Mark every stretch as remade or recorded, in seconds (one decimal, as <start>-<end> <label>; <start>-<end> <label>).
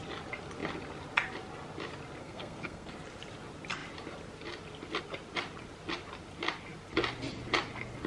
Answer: 0.0-2.2 recorded; 2.2-2.9 remade; 2.9-8.1 recorded